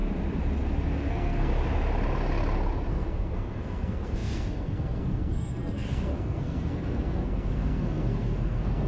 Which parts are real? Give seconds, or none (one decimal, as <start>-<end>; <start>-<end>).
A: 0.0-1.1; 1.5-2.9